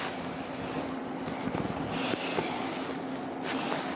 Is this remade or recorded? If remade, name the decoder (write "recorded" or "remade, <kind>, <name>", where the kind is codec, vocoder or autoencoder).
recorded